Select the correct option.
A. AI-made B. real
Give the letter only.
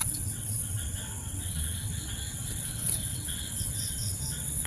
A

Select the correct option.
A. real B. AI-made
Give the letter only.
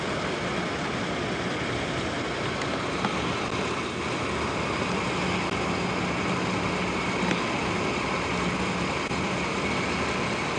A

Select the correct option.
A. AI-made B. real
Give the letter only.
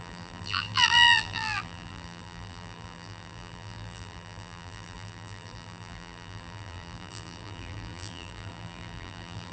A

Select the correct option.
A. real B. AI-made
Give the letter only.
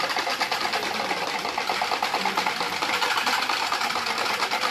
A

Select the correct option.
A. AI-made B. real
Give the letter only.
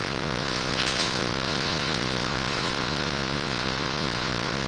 A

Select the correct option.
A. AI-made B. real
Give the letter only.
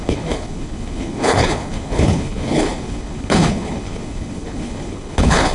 A